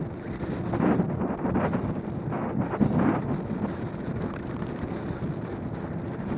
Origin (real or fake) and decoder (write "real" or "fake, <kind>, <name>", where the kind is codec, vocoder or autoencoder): real